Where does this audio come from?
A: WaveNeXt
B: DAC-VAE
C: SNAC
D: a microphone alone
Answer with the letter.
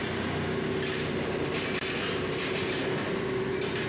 D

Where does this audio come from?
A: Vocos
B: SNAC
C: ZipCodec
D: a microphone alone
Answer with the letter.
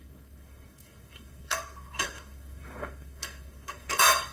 B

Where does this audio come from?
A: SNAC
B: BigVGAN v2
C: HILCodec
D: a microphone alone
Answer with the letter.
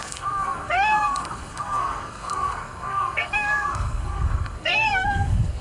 A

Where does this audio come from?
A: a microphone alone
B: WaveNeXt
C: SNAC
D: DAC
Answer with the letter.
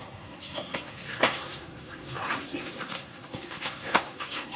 C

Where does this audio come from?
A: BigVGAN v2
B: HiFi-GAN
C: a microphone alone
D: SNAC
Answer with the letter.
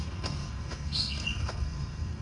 D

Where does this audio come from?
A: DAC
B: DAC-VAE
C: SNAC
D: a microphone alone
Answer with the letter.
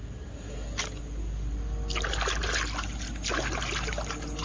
D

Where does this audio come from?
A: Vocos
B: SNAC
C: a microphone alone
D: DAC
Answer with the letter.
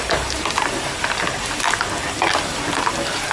C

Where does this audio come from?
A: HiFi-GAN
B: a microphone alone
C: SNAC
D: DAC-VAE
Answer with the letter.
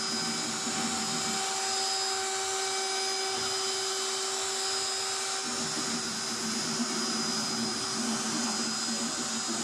B